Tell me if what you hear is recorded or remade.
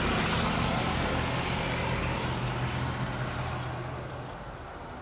recorded